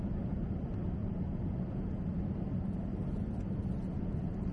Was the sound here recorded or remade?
recorded